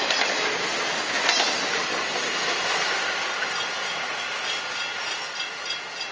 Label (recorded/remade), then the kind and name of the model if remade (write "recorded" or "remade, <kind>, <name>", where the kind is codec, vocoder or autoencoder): recorded